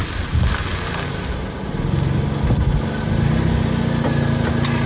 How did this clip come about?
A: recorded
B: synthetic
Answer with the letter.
A